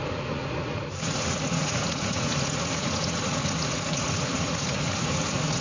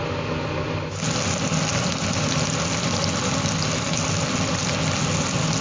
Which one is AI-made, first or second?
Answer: first